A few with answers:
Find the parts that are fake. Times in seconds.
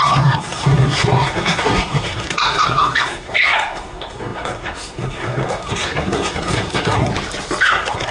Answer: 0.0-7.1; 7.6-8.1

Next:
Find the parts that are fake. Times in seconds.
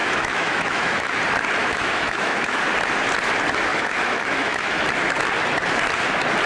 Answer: 0.0-1.2; 1.6-2.6; 3.7-4.8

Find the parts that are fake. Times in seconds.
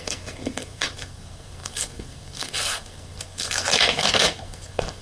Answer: 0.0-5.0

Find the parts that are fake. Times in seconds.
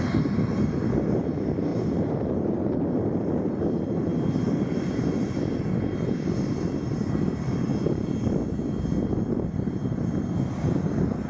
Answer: 0.0-7.7; 8.6-11.3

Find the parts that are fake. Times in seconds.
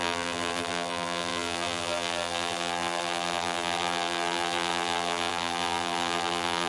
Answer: 0.0-6.7